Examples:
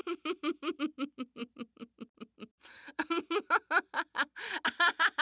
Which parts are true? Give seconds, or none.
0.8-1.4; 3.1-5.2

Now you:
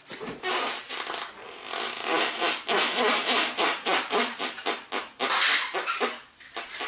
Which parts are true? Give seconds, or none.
0.9-1.4; 4.6-6.9